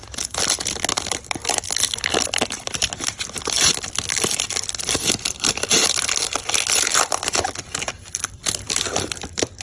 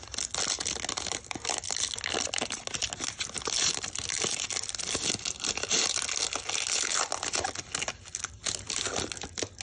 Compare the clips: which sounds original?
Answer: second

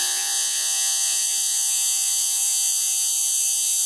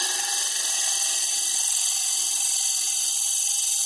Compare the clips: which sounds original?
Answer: second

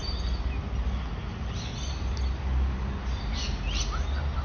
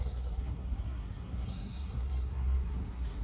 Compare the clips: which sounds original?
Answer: first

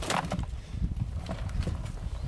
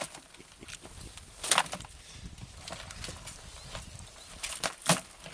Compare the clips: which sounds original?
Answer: second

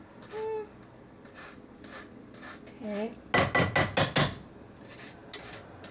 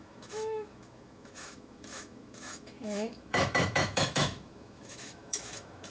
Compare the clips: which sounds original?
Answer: first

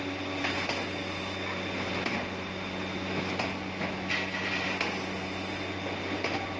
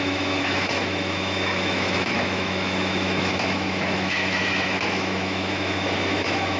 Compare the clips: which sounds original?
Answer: first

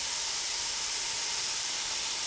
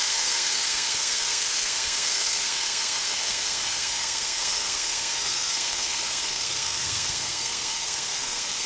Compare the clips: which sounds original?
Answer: first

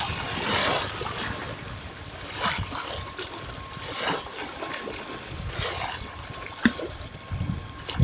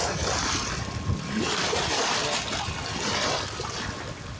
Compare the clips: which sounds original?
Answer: second